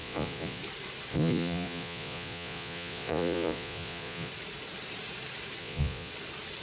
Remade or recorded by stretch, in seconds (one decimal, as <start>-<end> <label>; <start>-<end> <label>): 0.0-0.6 remade; 0.6-1.1 recorded; 1.1-4.3 remade; 4.3-5.6 recorded; 5.6-6.1 remade; 6.1-6.6 recorded